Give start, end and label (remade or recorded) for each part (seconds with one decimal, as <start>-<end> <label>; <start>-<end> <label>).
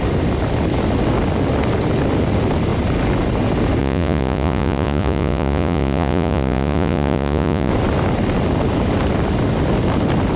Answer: 0.0-3.8 recorded; 3.8-7.7 remade; 7.7-10.4 recorded